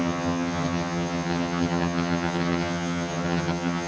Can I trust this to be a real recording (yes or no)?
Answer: no